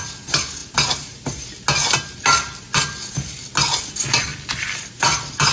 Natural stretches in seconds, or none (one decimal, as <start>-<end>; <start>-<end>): 0.0-5.5